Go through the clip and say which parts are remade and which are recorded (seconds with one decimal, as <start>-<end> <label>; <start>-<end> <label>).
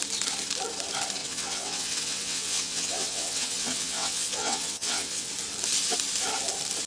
0.0-1.2 recorded; 1.2-5.3 remade; 5.3-6.9 recorded